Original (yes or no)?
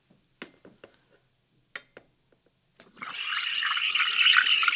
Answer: yes